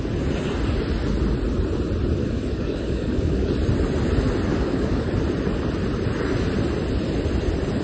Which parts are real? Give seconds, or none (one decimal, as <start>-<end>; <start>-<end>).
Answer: 0.0-2.2; 3.5-4.5; 5.1-7.8